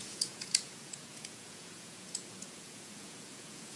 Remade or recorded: remade